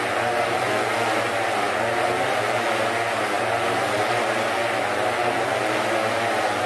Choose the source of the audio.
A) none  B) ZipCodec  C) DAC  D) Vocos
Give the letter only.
A